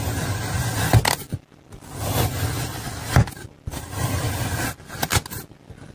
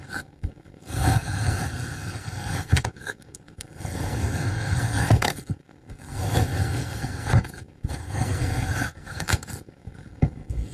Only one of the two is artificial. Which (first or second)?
second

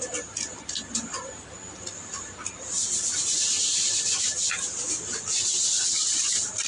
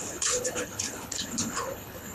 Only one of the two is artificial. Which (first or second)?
second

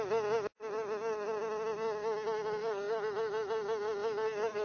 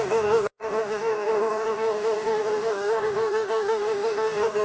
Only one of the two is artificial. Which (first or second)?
second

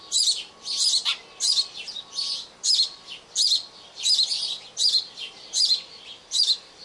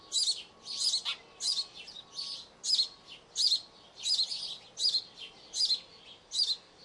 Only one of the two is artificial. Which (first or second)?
first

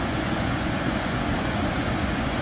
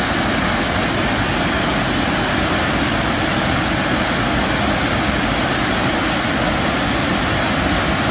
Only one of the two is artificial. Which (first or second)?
first